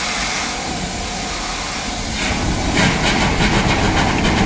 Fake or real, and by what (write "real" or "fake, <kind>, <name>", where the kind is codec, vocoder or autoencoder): real